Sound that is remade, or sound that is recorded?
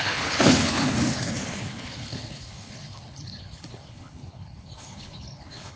remade